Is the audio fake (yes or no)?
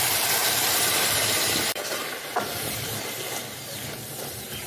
yes